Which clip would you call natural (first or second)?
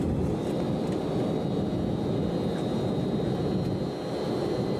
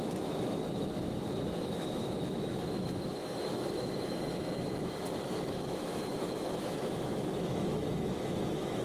first